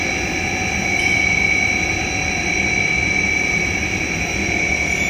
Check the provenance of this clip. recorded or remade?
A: recorded